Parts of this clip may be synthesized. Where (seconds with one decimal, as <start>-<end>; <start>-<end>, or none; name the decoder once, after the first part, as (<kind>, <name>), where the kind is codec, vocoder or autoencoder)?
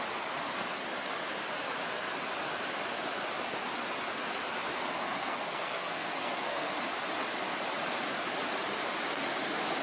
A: 5.0-6.7 (codec, SNAC)